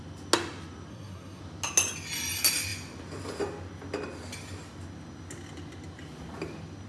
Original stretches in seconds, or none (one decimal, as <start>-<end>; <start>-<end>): 0.0-0.9; 1.4-6.9